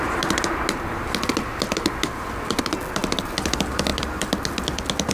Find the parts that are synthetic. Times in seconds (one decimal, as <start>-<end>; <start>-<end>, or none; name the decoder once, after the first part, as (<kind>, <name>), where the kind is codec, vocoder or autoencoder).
none